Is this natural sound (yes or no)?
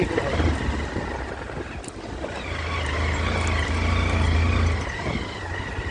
yes